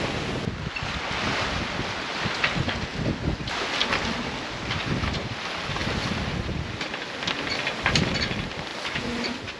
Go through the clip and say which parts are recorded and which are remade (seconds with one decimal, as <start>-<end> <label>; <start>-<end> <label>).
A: 0.0-9.6 recorded